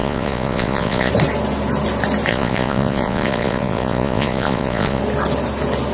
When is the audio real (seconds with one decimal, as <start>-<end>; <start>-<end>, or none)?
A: 1.1-2.3; 5.0-5.9